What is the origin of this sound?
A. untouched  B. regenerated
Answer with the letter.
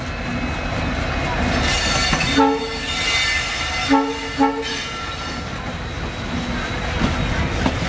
A